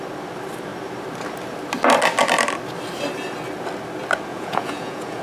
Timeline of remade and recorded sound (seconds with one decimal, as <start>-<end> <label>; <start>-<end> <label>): 0.0-4.3 recorded; 4.3-5.2 remade